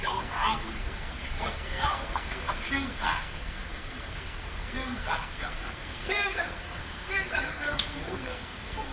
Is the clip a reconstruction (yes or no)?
yes